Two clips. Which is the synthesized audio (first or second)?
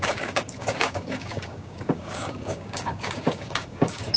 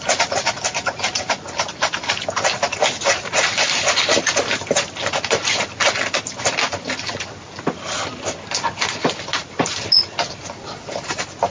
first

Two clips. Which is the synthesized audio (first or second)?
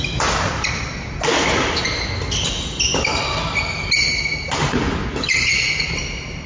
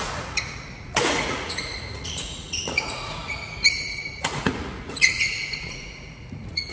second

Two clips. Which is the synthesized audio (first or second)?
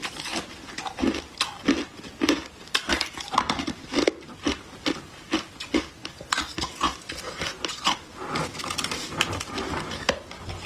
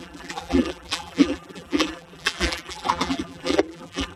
second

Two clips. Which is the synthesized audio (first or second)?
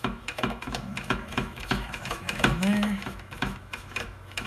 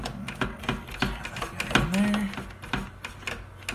first